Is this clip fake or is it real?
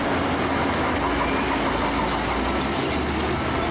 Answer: real